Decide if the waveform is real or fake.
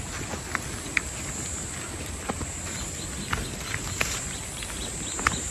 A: real